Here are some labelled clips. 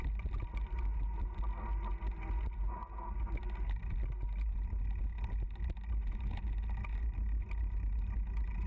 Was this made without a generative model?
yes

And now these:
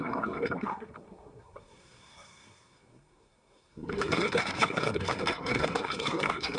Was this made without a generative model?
no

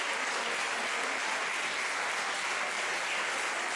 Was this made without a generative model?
yes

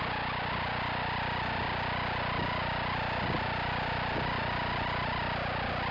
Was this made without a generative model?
yes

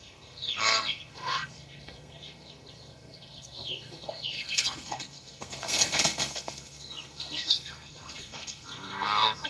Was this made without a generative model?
no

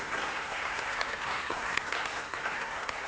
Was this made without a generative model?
no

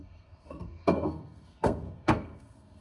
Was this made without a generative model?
no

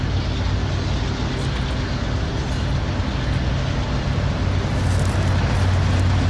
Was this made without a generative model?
yes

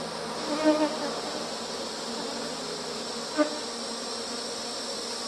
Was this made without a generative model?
yes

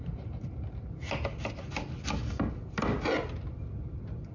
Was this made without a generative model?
yes